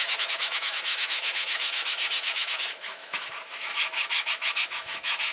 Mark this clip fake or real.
fake